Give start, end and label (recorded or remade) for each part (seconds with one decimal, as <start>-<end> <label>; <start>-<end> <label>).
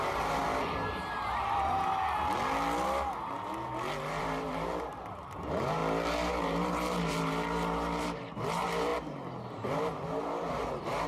0.0-0.4 remade; 0.4-4.2 recorded; 4.2-5.8 remade; 5.8-6.3 recorded; 6.3-8.9 remade; 8.9-9.5 recorded; 9.5-11.1 remade